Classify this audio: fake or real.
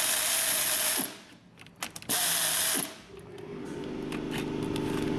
real